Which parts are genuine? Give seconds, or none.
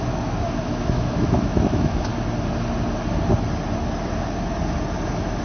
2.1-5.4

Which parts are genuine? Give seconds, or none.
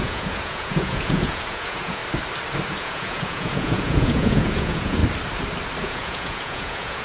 2.0-2.8; 5.0-5.8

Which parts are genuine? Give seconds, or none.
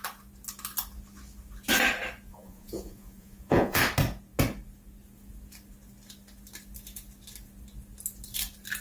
0.0-2.3; 3.8-8.8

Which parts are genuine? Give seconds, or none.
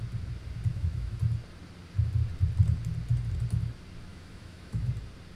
0.0-0.7; 1.2-4.1; 4.9-5.4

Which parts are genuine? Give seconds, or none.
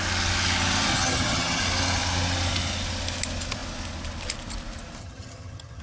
0.0-0.9; 1.6-5.0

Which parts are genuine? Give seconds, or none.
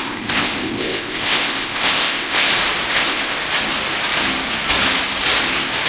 2.5-2.9; 3.4-5.9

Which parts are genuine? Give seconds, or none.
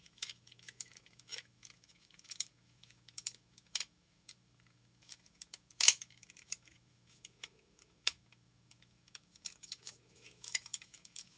none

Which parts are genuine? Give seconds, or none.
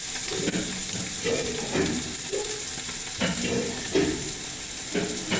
none